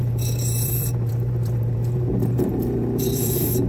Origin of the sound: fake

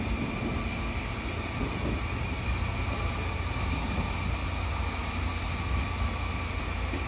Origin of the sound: real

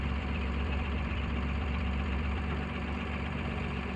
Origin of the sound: fake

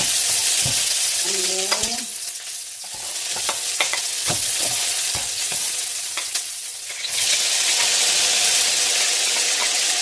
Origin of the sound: fake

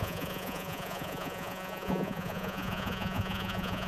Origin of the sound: fake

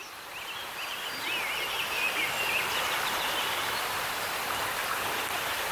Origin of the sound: real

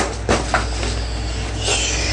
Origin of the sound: real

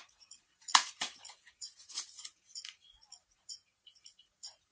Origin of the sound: fake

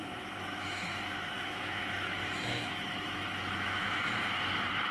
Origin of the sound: fake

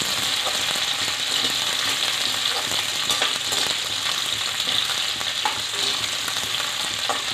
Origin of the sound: real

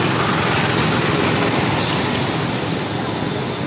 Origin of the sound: real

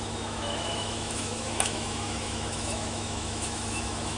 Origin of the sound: fake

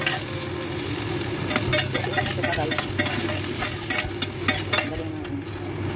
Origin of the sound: real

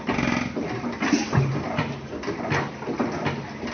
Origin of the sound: real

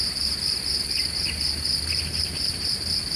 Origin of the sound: real